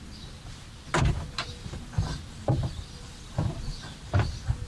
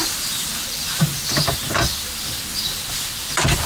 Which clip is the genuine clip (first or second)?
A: first